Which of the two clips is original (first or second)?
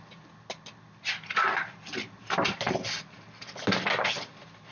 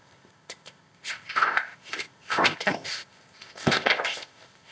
first